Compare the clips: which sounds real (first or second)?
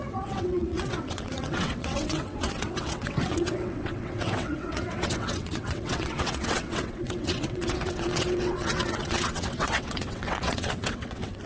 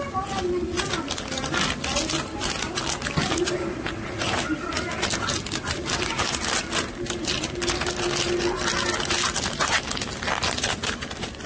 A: second